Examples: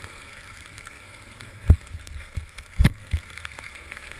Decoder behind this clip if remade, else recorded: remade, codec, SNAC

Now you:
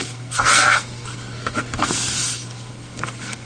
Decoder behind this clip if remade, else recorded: remade, codec, SNAC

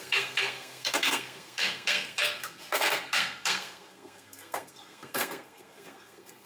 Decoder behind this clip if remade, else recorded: remade, codec, SNAC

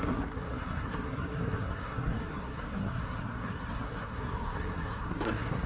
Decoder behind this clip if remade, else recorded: remade, codec, SNAC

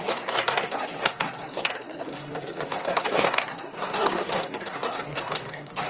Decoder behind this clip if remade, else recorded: remade, codec, SNAC